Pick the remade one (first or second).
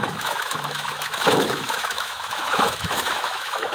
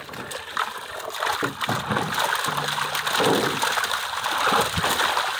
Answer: first